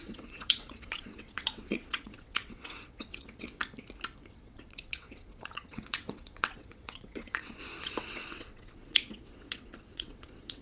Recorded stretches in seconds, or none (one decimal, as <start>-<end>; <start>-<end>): 3.6-4.3